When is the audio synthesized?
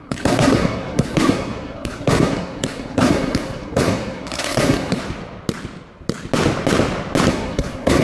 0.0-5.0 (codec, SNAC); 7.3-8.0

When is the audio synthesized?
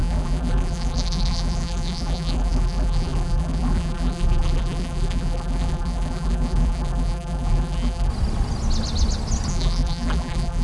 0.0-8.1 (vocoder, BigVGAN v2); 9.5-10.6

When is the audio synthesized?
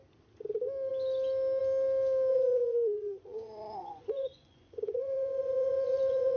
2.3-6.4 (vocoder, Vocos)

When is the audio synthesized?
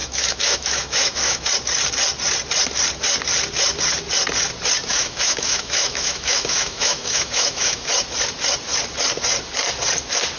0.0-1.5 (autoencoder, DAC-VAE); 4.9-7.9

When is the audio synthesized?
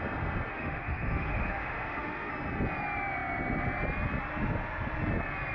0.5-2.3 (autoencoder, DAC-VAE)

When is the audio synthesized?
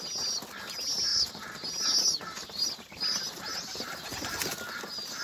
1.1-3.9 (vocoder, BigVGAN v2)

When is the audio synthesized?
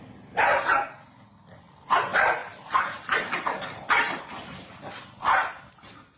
2.4-3.4 (vocoder, BigVGAN v2)